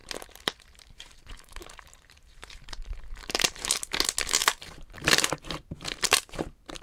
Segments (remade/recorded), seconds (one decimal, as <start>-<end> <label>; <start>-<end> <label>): 0.0-3.7 remade; 3.7-4.4 recorded; 4.4-6.8 remade